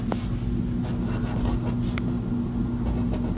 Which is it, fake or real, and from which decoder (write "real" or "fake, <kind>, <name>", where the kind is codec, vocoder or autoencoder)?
real